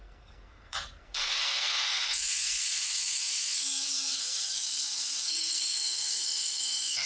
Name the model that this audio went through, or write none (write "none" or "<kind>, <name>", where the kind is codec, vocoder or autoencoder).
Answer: codec, SNAC